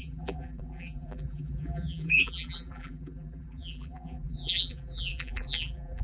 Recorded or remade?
remade